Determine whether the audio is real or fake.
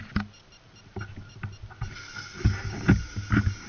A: real